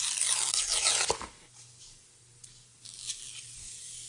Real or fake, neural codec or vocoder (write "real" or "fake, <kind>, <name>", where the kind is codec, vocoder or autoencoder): real